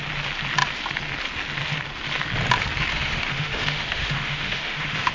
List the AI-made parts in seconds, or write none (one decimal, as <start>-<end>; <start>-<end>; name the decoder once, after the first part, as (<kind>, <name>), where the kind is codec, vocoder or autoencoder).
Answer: 2.9-5.1 (autoencoder, DAC-VAE)